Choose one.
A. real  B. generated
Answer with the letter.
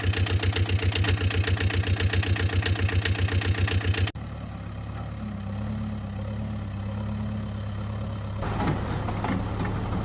A